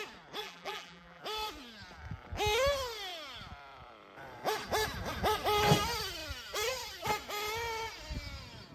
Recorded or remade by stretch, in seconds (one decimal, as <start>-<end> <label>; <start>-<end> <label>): 0.0-0.4 recorded; 0.4-1.2 remade; 1.2-8.7 recorded